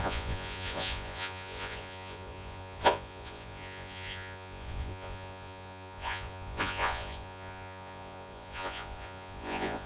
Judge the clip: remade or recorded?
remade